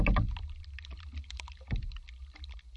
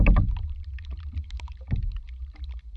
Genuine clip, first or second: first